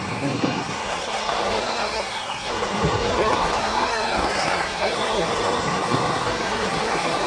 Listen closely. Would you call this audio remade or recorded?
remade